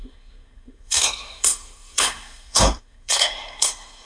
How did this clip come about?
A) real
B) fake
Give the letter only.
B